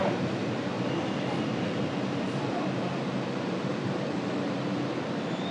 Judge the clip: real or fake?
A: fake